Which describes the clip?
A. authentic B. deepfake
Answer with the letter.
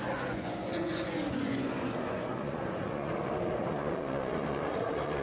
B